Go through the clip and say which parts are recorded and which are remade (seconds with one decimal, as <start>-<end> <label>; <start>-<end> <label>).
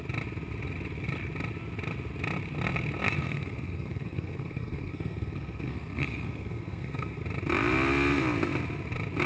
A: 0.0-3.2 recorded; 3.2-7.2 remade; 7.2-9.3 recorded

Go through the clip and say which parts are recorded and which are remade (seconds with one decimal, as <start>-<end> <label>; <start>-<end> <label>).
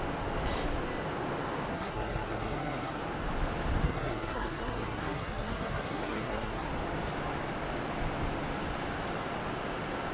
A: 0.0-1.7 recorded; 1.7-3.0 remade; 3.0-3.8 recorded; 3.8-6.7 remade; 6.7-10.1 recorded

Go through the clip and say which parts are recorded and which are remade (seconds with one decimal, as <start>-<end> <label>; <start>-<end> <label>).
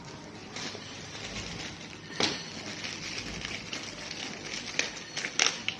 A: 0.0-0.4 recorded; 0.4-1.2 remade; 1.2-5.8 recorded